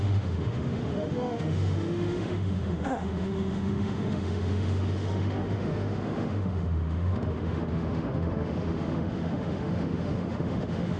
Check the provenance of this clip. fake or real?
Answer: fake